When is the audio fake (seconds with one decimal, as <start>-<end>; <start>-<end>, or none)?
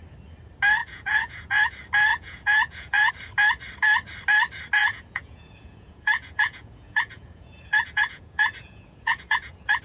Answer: 0.8-1.7; 2.1-3.1; 4.8-9.8